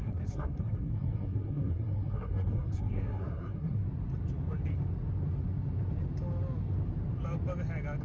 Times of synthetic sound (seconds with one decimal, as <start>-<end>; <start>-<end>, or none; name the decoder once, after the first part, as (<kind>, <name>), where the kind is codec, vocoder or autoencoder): 0.0-3.8 (codec, SNAC)